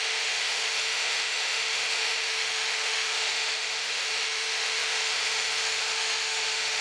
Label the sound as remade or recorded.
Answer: remade